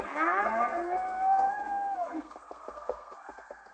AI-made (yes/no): yes